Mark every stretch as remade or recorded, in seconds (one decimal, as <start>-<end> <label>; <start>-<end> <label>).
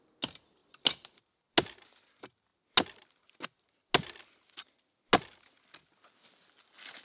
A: 0.0-7.0 recorded